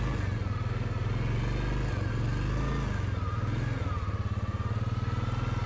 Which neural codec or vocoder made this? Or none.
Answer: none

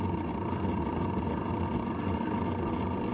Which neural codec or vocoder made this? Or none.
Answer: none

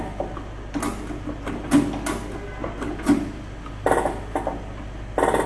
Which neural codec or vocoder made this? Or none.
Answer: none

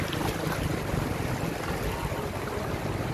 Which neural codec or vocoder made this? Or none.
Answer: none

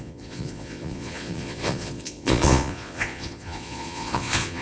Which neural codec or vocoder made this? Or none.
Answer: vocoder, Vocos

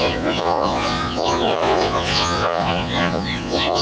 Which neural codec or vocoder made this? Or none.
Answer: vocoder, Vocos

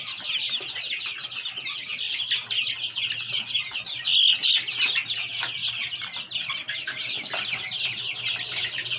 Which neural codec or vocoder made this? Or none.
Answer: none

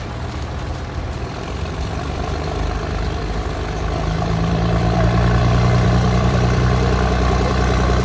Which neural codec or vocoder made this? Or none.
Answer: vocoder, BigVGAN v2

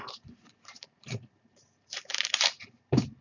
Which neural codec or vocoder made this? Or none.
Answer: vocoder, BigVGAN v2